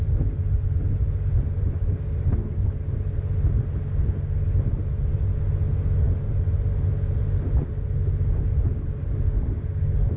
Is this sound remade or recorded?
recorded